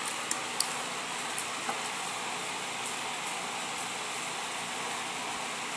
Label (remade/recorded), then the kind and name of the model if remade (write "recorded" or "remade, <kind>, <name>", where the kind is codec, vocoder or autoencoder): recorded